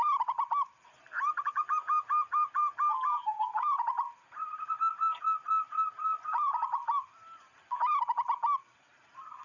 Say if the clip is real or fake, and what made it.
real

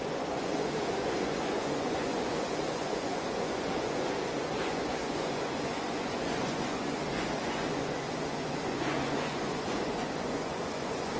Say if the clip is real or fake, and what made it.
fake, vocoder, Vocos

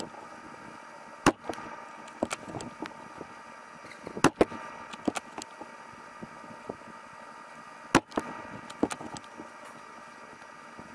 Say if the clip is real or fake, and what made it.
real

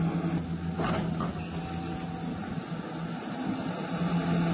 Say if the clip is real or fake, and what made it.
real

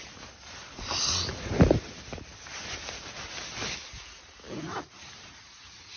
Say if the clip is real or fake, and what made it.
real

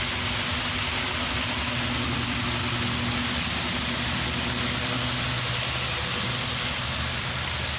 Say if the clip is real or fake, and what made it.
real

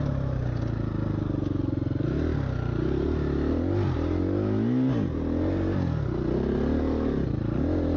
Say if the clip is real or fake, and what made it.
real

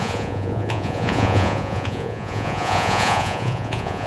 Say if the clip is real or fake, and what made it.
fake, vocoder, Vocos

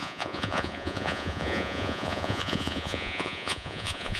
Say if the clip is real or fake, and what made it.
fake, vocoder, Vocos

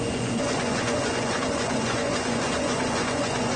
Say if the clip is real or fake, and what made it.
fake, vocoder, Vocos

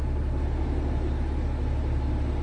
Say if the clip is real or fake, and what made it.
real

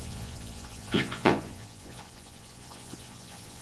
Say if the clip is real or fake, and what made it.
fake, vocoder, Vocos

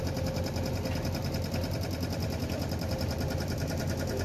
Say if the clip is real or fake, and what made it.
real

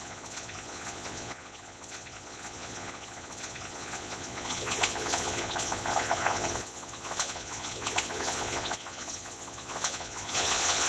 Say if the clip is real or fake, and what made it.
fake, vocoder, Vocos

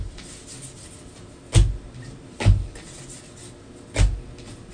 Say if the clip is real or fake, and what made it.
real